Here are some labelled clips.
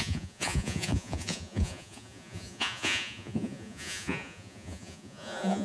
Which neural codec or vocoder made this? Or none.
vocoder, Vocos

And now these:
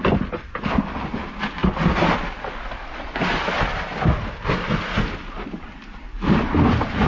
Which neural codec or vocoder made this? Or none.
none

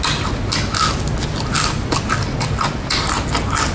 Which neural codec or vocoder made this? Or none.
none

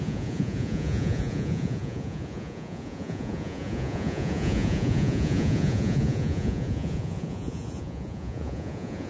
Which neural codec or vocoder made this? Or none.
vocoder, Vocos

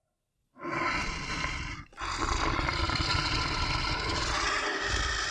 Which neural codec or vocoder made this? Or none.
none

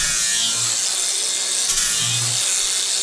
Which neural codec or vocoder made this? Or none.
none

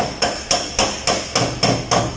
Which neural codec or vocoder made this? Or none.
none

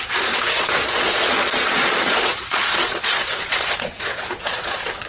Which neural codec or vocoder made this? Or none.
vocoder, Vocos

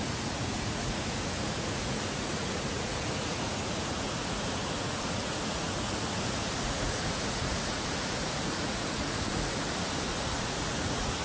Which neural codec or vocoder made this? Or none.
vocoder, Vocos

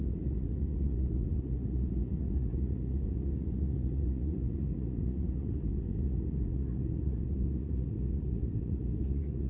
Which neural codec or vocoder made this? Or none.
vocoder, Vocos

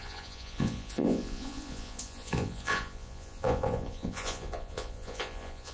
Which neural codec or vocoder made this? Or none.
vocoder, Vocos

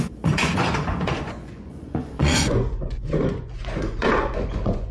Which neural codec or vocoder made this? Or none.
vocoder, Vocos